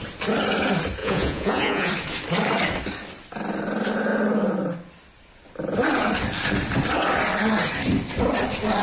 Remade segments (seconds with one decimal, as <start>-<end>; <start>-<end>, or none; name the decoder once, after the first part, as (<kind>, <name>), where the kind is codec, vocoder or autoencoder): 1.0-1.9 (vocoder, Vocos)